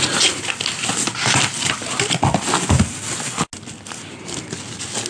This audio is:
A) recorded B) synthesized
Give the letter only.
A